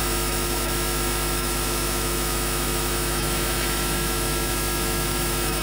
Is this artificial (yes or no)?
yes